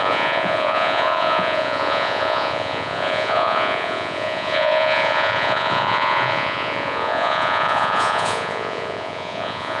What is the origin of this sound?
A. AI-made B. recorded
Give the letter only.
A